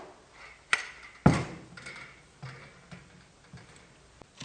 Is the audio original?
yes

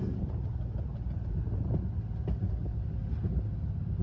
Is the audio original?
yes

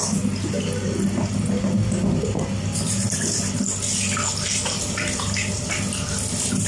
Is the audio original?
yes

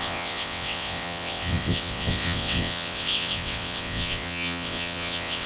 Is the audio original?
no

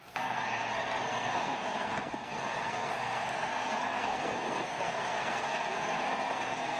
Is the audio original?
no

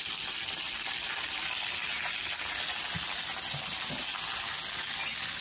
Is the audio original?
yes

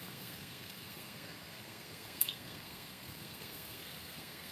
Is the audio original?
no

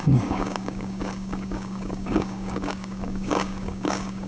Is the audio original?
no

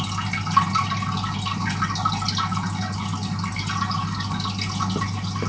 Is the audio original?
yes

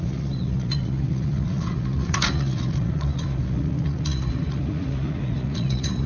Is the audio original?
no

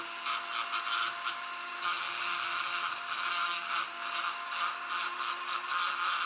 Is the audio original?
yes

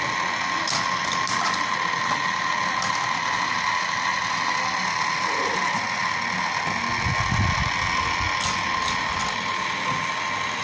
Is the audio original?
yes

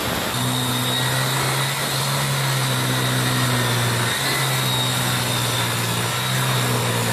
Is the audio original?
yes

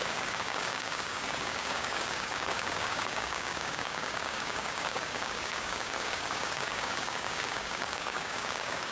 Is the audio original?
no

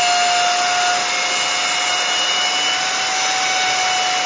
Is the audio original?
yes